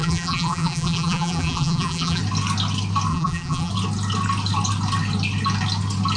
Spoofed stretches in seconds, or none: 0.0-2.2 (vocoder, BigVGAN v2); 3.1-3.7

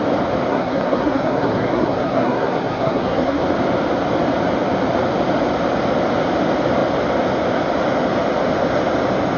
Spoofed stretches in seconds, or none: 0.5-3.4 (codec, SNAC)

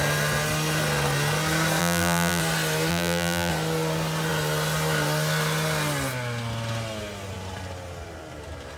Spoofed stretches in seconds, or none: 1.8-2.4 (vocoder, BigVGAN v2); 2.9-3.5

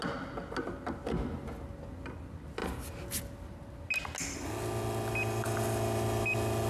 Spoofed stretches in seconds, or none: none

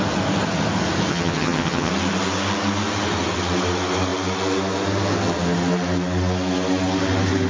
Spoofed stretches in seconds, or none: 1.1-1.9 (vocoder, HiFi-GAN)

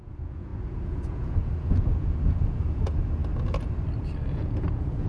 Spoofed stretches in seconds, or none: 0.0-3.2 (vocoder, Vocos); 4.3-5.1

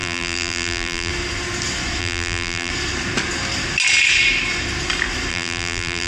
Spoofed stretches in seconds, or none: 0.0-1.1 (vocoder, BigVGAN v2); 2.0-2.7; 5.3-6.1

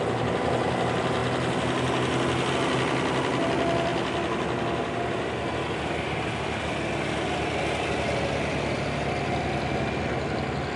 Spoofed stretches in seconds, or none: none